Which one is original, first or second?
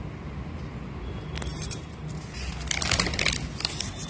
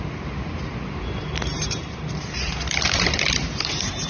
first